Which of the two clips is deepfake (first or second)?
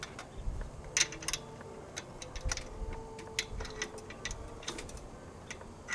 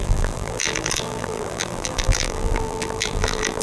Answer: second